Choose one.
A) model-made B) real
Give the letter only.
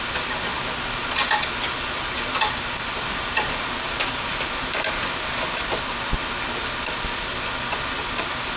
B